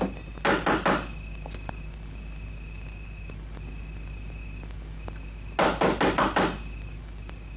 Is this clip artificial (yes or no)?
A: no